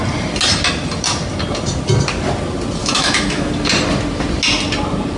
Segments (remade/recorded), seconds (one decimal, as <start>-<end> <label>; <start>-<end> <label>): 0.0-2.8 recorded; 2.8-3.5 remade; 3.5-5.2 recorded